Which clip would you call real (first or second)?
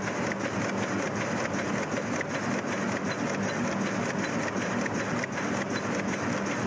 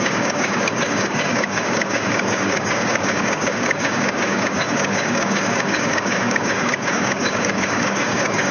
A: first